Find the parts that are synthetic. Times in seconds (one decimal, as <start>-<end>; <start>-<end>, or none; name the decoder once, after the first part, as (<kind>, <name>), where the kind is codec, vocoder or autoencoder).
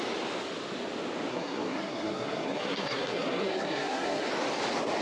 1.3-4.3 (codec, SNAC)